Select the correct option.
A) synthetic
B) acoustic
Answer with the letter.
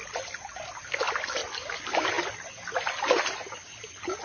B